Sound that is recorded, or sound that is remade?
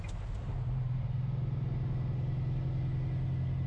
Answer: recorded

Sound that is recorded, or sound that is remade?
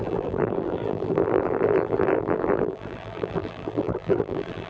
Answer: remade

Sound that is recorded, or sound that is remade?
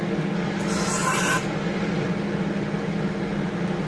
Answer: recorded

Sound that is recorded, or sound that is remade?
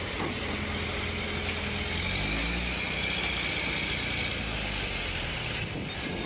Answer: recorded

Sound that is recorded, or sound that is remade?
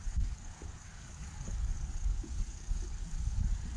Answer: remade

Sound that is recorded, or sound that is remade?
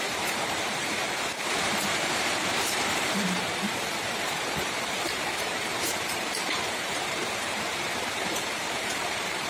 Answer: remade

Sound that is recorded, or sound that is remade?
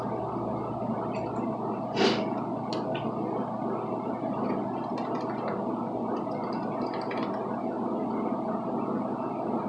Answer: recorded